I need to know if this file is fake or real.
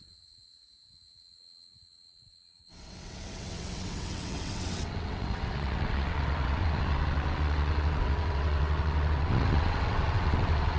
fake